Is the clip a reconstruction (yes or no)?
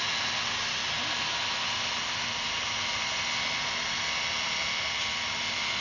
no